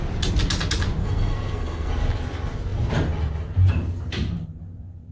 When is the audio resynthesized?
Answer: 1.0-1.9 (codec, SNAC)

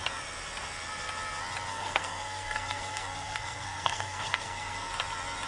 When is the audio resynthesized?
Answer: 1.7-4.9 (codec, SNAC)